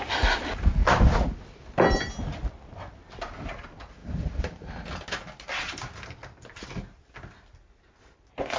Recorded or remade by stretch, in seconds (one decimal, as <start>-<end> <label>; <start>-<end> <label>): 0.0-0.8 recorded; 0.8-1.4 remade; 1.4-4.0 recorded; 4.0-4.7 remade; 4.7-8.6 recorded